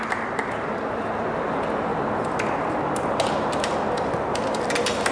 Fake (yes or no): no